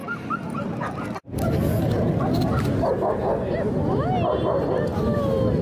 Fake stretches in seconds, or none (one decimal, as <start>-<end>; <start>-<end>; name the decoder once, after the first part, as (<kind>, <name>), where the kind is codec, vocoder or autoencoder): none